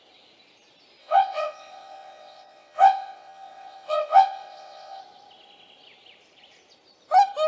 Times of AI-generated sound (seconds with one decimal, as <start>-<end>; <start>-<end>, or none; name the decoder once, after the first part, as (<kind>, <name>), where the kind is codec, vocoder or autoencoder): 1.0-5.0 (vocoder, WaveNeXt)